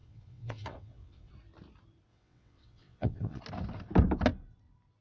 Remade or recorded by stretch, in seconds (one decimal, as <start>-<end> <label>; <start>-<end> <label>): 0.0-1.3 remade; 1.3-2.1 recorded; 2.1-3.4 remade; 3.4-5.0 recorded